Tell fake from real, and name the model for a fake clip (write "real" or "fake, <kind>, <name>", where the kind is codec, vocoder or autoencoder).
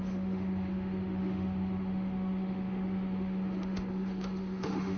fake, autoencoder, DAC-VAE